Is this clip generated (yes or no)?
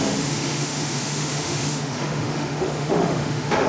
yes